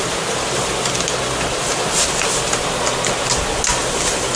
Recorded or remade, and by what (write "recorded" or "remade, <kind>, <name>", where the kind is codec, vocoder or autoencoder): recorded